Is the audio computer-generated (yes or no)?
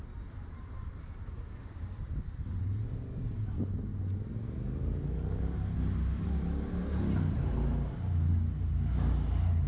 no